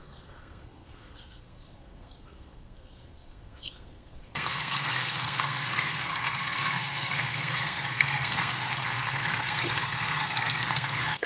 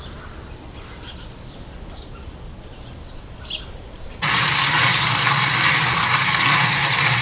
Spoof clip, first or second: first